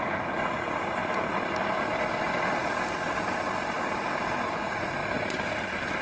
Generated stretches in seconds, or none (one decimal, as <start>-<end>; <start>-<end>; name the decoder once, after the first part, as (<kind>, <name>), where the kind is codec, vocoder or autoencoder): 0.0-1.0 (vocoder, Vocos); 4.6-5.0